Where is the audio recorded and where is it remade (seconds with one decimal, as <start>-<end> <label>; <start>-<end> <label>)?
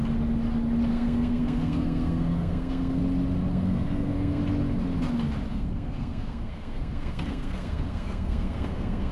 0.0-0.9 recorded; 0.9-3.0 remade; 3.0-3.5 recorded; 3.5-4.4 remade; 4.4-5.5 recorded; 5.5-9.1 remade